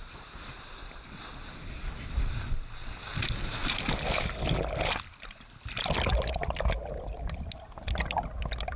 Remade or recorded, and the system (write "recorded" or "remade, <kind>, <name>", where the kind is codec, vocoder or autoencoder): recorded